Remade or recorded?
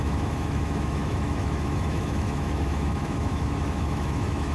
remade